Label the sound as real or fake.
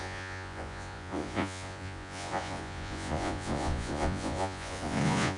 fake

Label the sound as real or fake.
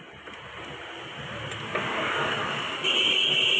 real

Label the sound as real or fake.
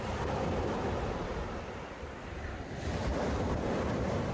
real